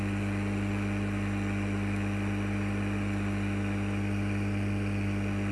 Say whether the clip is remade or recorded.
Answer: recorded